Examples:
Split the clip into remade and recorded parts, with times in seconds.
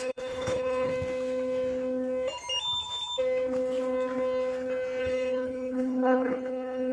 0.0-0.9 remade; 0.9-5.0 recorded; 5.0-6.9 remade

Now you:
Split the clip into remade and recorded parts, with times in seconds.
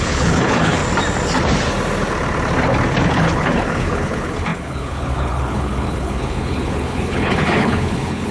0.0-0.8 remade; 0.8-3.1 recorded; 3.1-8.3 remade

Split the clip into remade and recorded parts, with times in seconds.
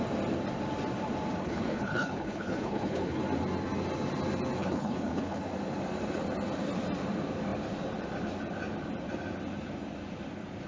0.0-1.4 recorded; 1.4-3.2 remade; 3.2-4.6 recorded; 4.6-5.4 remade; 5.4-10.7 recorded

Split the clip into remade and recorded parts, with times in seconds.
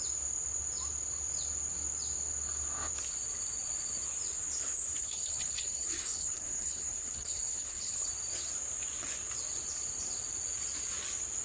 0.0-4.9 recorded; 4.9-8.1 remade; 8.1-11.4 recorded